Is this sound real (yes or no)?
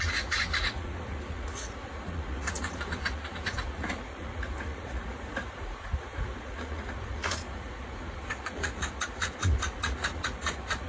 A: no